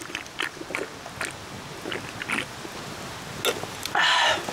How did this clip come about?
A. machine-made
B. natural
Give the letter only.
B